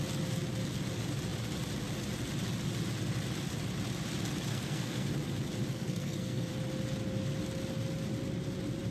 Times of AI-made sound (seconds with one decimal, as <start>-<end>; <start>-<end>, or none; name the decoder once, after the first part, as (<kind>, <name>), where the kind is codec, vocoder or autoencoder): 4.5-5.1 (codec, SNAC); 5.7-6.5